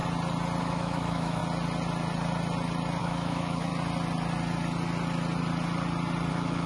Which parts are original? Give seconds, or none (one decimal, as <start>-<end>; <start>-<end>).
0.0-0.6; 1.4-3.0; 3.7-6.3

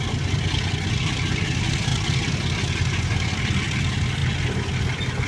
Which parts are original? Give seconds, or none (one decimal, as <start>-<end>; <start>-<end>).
0.0-5.3

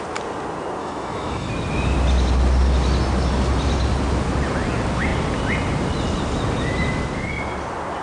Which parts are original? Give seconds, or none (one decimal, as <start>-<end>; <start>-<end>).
0.0-0.8; 1.5-8.0

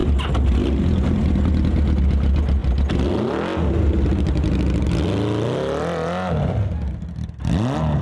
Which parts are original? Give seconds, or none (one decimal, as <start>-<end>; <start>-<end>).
0.0-8.0

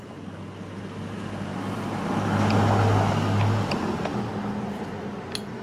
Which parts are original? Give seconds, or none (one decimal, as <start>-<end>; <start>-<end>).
0.0-5.6

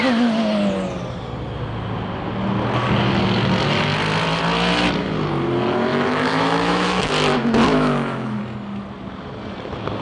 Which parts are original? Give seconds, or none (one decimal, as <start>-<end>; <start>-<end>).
0.0-5.9; 7.1-7.7; 8.4-10.0